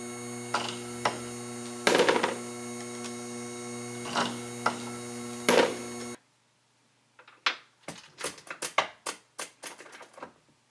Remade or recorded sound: recorded